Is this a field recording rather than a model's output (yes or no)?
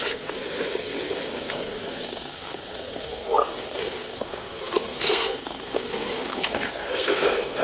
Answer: no